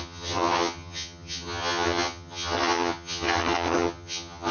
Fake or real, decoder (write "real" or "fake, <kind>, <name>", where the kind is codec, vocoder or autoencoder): fake, vocoder, HiFi-GAN